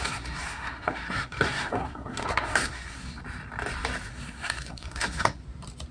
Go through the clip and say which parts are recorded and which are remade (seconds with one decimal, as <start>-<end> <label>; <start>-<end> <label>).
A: 0.0-3.2 remade; 3.2-4.1 recorded; 4.1-5.4 remade; 5.4-5.9 recorded

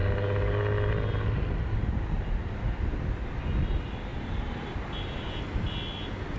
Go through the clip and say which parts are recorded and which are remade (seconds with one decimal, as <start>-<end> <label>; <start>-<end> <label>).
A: 0.0-6.4 recorded

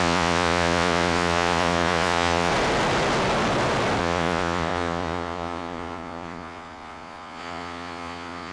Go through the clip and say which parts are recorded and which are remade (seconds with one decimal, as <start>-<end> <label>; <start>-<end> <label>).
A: 0.0-2.5 remade; 2.5-4.0 recorded; 4.0-8.5 remade

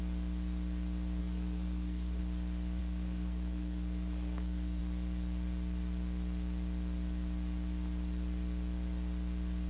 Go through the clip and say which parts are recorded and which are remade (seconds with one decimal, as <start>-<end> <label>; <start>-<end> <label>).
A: 0.0-1.2 recorded; 1.2-2.2 remade; 2.2-2.8 recorded; 2.8-4.8 remade; 4.8-9.7 recorded

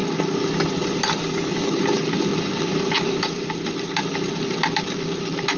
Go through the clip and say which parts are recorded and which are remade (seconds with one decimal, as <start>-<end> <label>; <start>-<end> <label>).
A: 0.0-5.6 recorded

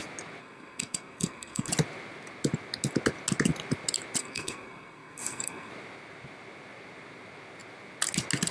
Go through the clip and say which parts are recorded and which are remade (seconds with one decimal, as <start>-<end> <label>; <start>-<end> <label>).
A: 0.0-0.4 recorded; 0.4-1.7 remade; 1.7-4.2 recorded; 4.2-5.7 remade; 5.7-8.5 recorded

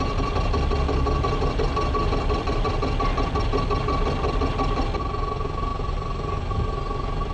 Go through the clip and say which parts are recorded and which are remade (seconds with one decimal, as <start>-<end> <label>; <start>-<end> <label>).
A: 0.0-7.3 recorded

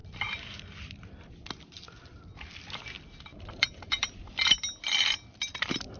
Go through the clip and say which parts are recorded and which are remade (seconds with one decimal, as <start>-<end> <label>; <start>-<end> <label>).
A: 0.0-3.3 recorded; 3.3-4.7 remade; 4.7-6.0 recorded